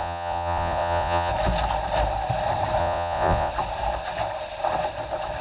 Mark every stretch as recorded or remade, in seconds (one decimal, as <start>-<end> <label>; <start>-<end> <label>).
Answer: 0.0-1.3 remade; 1.3-2.8 recorded; 2.8-3.5 remade; 3.5-5.4 recorded